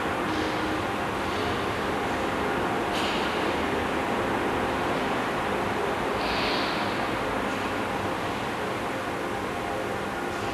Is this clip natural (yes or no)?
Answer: yes